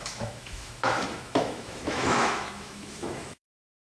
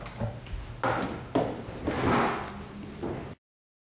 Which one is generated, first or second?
first